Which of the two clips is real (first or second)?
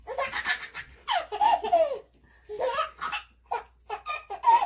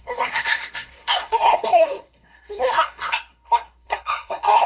first